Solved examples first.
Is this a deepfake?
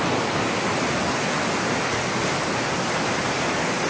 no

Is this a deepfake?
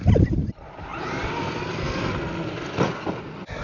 no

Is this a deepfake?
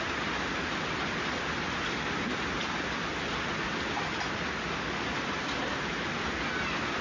no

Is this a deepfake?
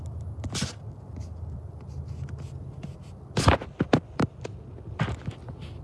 no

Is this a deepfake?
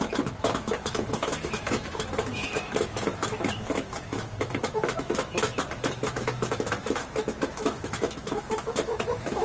yes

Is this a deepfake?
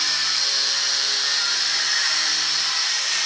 yes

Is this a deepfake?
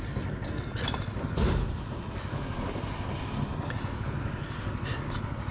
no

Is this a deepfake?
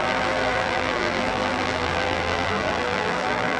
yes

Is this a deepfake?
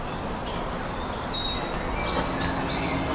no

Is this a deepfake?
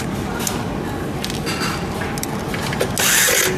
no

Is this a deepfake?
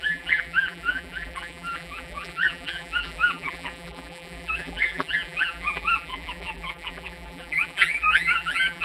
yes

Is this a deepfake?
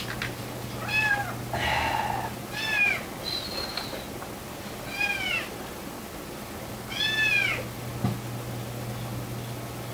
no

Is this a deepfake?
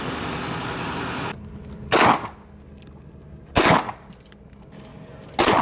no